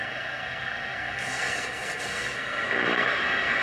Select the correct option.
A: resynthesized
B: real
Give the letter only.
A